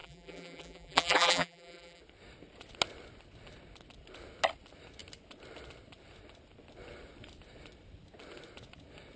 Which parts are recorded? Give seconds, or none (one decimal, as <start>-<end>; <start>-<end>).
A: 2.0-9.2